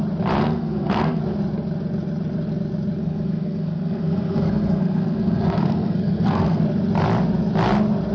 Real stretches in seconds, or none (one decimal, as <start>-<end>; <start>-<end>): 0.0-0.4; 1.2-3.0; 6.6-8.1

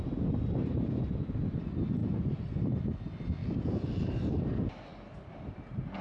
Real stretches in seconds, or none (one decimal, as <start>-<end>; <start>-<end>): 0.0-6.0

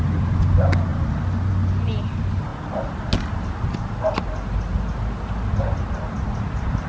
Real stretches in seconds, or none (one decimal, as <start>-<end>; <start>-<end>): 0.0-6.9